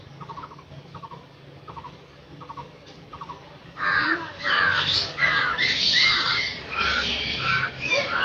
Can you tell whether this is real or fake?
fake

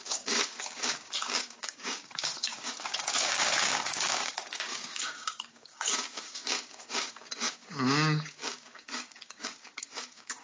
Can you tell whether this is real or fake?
fake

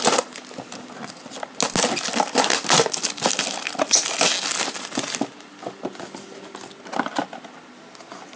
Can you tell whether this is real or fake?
real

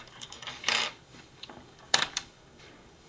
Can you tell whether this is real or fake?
fake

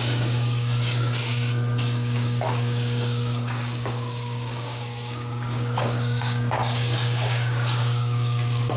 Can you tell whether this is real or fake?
fake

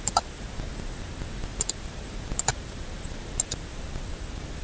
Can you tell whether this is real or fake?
real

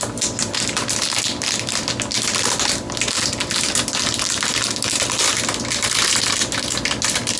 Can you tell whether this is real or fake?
real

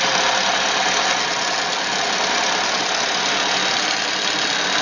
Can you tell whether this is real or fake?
real